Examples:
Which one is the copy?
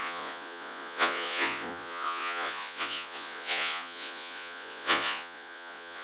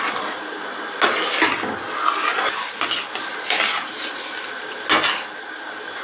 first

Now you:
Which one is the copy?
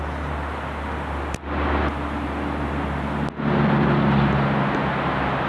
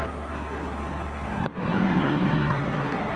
second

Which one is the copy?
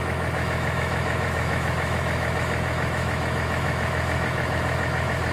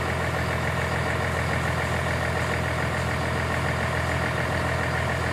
first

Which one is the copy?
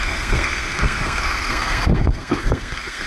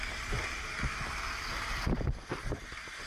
first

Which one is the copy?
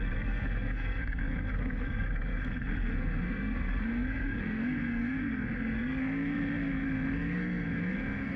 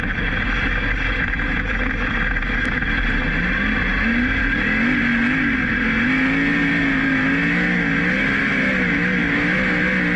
first